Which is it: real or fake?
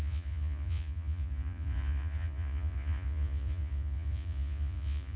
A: fake